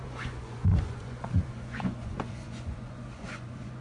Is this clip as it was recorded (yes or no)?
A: no